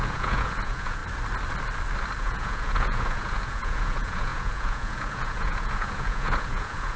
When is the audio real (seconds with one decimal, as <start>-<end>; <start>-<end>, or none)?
1.0-2.2